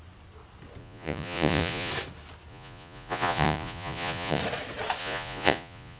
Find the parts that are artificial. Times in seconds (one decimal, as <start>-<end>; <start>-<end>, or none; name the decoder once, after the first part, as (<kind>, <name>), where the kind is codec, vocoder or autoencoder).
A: 0.8-1.9 (vocoder, Vocos); 2.5-4.4; 5.0-6.0